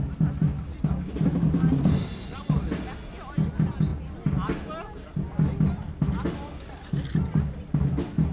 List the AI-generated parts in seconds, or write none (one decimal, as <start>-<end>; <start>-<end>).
none